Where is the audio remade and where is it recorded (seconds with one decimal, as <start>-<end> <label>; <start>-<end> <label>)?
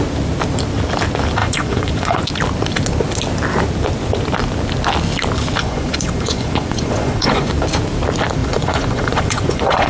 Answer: 0.0-1.4 recorded; 1.4-2.2 remade; 2.2-5.6 recorded; 5.6-7.5 remade; 7.5-8.4 recorded; 8.4-9.9 remade